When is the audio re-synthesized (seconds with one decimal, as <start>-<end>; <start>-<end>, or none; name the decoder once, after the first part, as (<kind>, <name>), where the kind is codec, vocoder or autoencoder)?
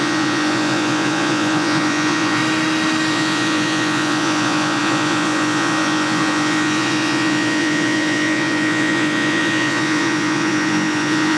0.0-2.4 (vocoder, Vocos); 3.1-11.4